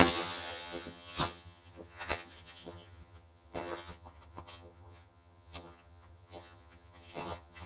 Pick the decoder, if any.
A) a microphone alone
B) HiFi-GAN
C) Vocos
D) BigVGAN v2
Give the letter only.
B